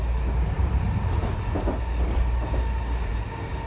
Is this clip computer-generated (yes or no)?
no